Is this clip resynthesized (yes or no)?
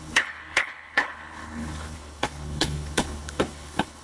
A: yes